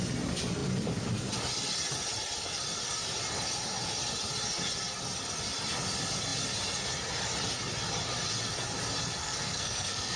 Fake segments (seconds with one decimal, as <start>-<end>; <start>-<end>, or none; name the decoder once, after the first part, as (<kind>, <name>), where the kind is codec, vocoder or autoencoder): 9.2-10.2 (codec, SNAC)